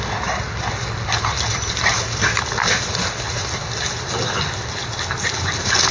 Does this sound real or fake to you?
real